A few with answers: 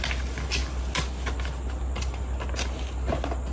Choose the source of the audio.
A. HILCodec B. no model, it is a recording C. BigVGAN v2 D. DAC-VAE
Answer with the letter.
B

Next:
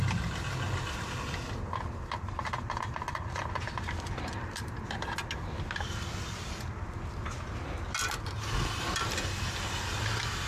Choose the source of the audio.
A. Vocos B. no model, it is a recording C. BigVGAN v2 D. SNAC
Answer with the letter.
B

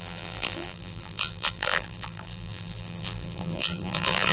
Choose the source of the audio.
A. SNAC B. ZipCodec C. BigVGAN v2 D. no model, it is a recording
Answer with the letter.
C